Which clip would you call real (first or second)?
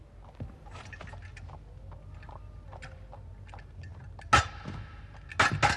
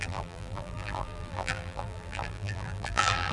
first